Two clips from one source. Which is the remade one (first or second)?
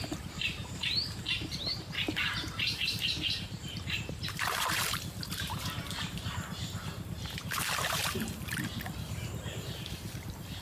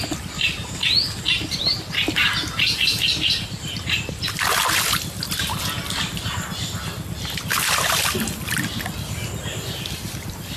first